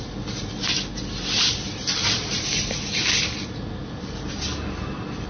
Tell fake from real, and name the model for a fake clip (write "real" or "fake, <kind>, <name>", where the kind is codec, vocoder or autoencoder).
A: real